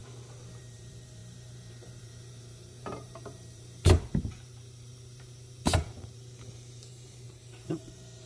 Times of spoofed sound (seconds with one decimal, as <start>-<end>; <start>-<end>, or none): 0.6-8.3

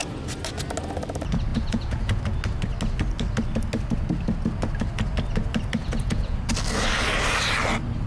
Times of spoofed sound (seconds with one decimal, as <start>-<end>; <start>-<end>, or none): 1.5-2.2; 5.8-6.4

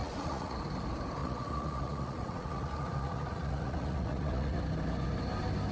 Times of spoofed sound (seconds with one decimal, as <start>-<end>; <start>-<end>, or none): 0.0-0.6; 1.2-4.6

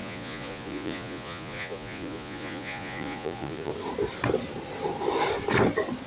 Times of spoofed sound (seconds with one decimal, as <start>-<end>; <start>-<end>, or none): 0.0-3.7

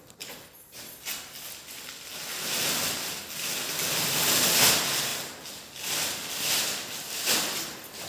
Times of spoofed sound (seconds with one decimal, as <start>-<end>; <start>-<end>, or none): none